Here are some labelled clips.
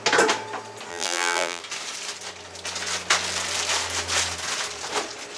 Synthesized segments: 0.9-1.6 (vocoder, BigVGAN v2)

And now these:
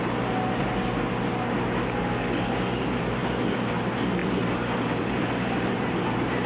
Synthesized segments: 3.2-3.7 (vocoder, BigVGAN v2); 4.2-6.0

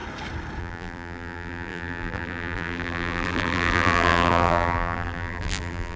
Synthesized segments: 0.6-6.0 (vocoder, BigVGAN v2)

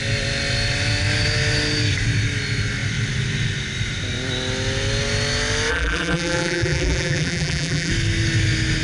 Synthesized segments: 5.7-7.9 (vocoder, BigVGAN v2)

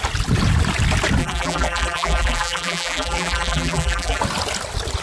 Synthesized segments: 1.2-4.2 (vocoder, BigVGAN v2)

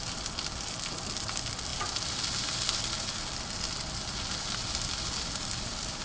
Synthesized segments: 0.0-6.0 (vocoder, BigVGAN v2)